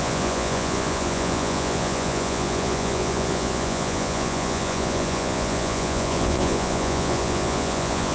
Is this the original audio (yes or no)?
no